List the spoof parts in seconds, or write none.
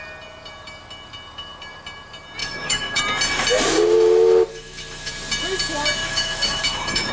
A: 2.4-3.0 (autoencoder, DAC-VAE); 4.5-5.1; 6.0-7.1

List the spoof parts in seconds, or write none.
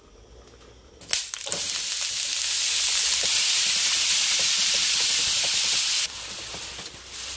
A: none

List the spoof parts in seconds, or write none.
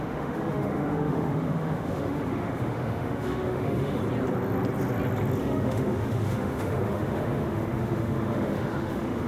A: 0.0-4.0 (autoencoder, DAC-VAE); 5.4-9.3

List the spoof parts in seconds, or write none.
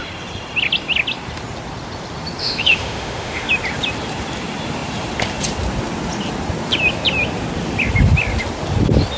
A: 2.4-3.5 (autoencoder, DAC-VAE)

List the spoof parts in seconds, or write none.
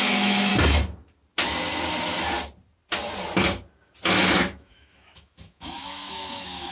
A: 0.0-0.5 (autoencoder, DAC-VAE); 4.4-6.7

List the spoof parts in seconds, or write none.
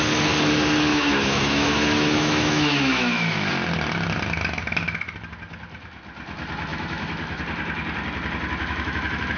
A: 0.9-3.5 (autoencoder, DAC-VAE); 6.7-7.4; 8.6-9.4